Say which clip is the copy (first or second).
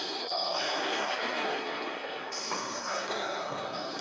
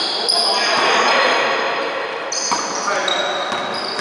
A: first